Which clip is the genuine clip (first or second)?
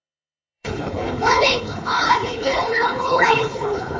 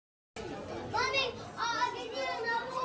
second